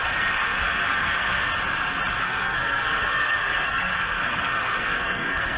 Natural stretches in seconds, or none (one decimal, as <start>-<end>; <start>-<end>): 1.5-2.2